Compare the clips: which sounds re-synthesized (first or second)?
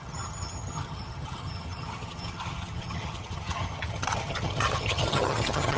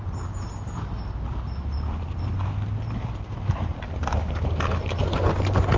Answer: first